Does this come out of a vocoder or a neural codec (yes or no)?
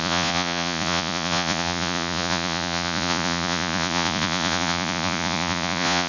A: yes